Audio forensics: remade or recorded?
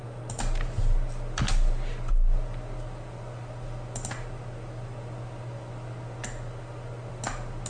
recorded